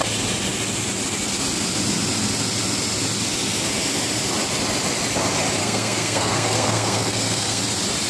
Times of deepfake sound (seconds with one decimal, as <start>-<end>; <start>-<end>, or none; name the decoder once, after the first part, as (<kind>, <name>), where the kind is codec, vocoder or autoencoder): 5.6-7.6 (codec, SNAC)

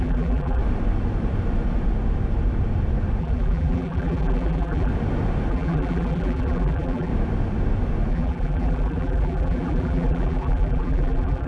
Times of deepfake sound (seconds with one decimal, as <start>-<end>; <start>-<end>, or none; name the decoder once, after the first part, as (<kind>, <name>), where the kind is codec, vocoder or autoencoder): 0.0-0.6 (vocoder, BigVGAN v2); 3.2-4.9; 5.5-7.1; 8.1-11.5